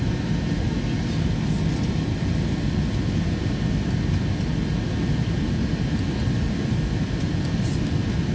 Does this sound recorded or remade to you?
recorded